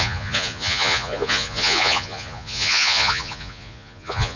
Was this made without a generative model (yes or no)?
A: no